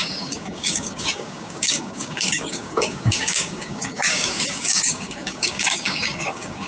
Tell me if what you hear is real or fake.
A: fake